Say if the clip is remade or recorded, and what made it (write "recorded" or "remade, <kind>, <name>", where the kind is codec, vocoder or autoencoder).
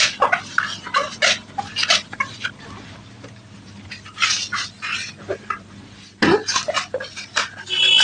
recorded